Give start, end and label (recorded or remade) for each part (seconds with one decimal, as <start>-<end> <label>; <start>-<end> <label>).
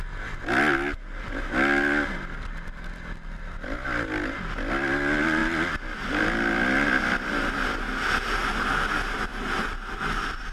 0.0-10.5 recorded